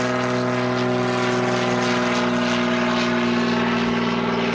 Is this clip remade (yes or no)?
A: no